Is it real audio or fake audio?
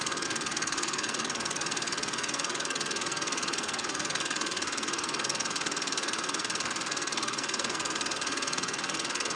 fake